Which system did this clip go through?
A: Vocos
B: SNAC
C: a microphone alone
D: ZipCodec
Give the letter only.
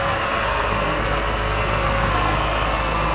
B